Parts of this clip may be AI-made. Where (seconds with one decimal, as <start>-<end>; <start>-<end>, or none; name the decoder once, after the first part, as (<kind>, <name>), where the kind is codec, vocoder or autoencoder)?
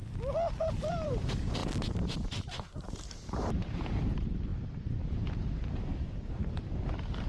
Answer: 0.9-7.3 (vocoder, BigVGAN v2)